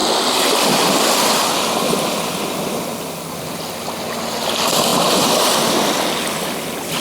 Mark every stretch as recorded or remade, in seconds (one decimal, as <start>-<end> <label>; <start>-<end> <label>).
0.0-7.0 recorded